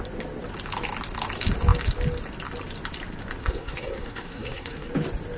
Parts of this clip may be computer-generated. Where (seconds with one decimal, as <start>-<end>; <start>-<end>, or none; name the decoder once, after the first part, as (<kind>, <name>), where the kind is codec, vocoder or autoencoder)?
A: 3.4-4.9 (codec, SNAC)